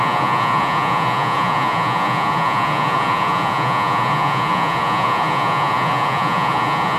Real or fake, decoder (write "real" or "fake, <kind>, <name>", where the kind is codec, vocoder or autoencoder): fake, vocoder, Vocos